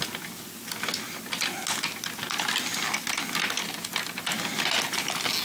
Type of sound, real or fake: real